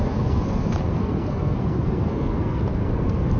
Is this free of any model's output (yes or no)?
no